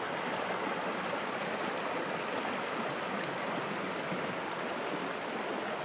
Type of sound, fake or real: real